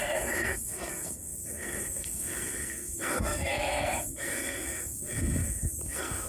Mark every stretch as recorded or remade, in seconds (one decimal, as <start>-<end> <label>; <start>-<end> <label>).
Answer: 0.0-6.3 remade